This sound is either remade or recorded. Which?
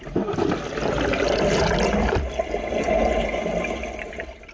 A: recorded